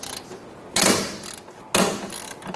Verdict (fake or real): real